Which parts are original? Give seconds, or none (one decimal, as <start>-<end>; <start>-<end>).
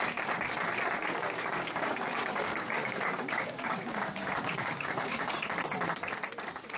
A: 0.0-1.2; 5.3-6.8